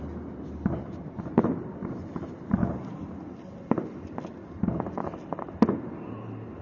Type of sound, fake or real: real